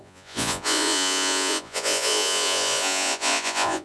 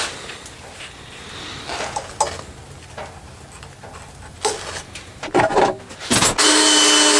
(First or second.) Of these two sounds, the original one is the second